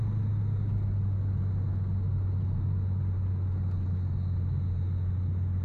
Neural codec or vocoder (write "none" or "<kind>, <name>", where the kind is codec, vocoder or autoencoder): none